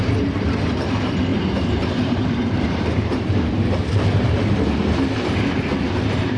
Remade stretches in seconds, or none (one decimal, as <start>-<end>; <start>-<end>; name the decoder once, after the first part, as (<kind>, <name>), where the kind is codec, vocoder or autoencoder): 1.3-4.1 (vocoder, BigVGAN v2)